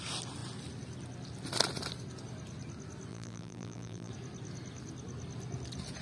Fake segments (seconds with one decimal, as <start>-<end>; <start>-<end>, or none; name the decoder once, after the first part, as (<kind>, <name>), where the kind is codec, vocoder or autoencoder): 3.1-4.1 (vocoder, BigVGAN v2)